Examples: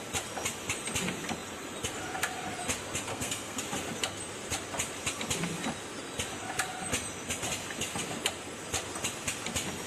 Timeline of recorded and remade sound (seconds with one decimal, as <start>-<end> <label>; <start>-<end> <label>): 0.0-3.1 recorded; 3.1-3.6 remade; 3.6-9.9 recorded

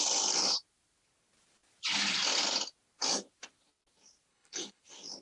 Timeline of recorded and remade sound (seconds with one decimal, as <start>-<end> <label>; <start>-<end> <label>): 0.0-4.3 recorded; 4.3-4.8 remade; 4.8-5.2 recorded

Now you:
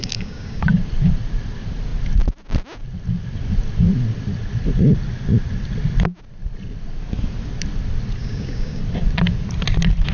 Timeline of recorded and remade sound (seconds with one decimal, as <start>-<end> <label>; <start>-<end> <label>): 0.0-0.6 remade; 0.6-8.2 recorded; 8.2-8.8 remade; 8.8-10.1 recorded

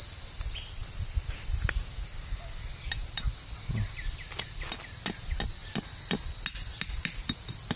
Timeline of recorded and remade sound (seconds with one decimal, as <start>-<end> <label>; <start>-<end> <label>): 0.0-7.8 recorded

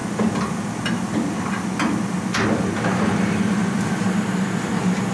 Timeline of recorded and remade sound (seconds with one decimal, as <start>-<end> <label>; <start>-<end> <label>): 0.0-5.1 recorded

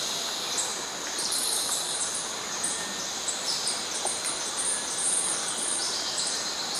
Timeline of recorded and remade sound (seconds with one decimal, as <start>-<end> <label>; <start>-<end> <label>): 0.0-0.7 recorded; 0.7-3.7 remade; 3.7-5.8 recorded; 5.8-6.8 remade